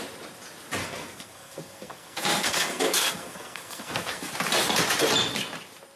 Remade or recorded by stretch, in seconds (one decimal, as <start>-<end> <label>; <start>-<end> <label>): 0.0-0.8 recorded; 0.8-4.3 remade; 4.3-6.0 recorded